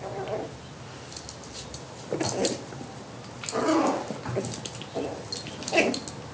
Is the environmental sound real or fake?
real